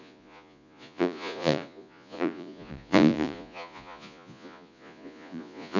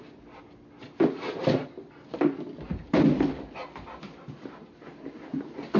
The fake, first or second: first